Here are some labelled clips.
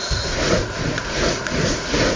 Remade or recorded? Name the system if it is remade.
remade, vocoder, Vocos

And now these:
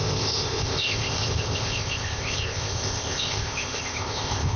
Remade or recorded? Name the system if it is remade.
remade, codec, ZipCodec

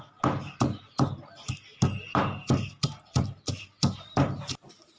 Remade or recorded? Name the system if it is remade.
recorded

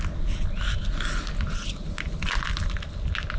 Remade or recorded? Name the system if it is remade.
recorded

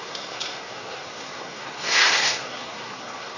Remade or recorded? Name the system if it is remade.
remade, codec, SNAC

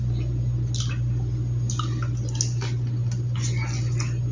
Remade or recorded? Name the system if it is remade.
recorded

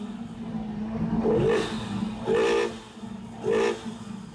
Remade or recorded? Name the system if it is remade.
recorded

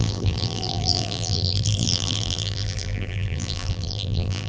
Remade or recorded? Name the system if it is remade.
remade, vocoder, BigVGAN v2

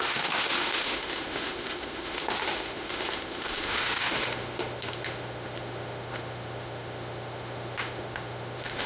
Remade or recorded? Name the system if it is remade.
remade, autoencoder, DAC-VAE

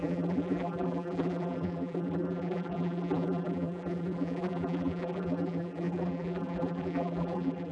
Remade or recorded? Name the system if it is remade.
remade, vocoder, BigVGAN v2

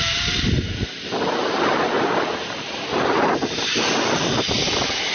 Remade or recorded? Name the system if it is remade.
recorded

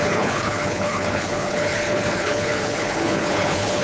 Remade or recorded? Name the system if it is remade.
remade, codec, HILCodec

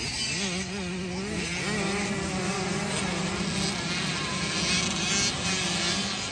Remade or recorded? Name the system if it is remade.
recorded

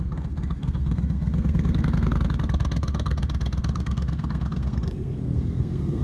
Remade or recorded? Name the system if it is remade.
remade, codec, SNAC